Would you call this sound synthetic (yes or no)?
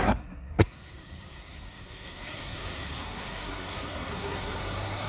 yes